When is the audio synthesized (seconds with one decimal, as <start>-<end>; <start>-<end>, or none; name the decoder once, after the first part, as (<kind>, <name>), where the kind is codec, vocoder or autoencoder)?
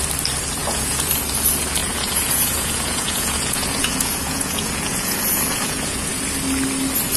0.6-1.1 (vocoder, Vocos); 1.8-6.1